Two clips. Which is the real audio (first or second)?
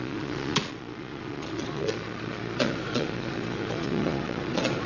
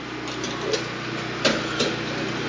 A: second